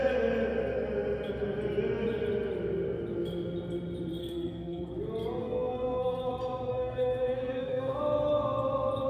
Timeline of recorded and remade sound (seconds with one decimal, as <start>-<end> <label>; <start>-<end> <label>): 0.0-4.2 recorded; 4.2-4.9 remade; 4.9-5.4 recorded; 5.4-6.3 remade; 6.3-6.7 recorded; 6.7-8.0 remade; 8.0-9.1 recorded